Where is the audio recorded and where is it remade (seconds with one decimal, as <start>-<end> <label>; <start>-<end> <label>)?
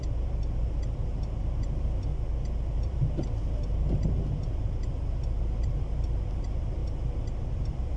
0.0-2.1 remade; 2.1-2.7 recorded; 2.7-6.8 remade; 6.8-7.4 recorded; 7.4-8.0 remade